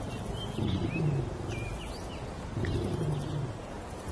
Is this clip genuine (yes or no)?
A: yes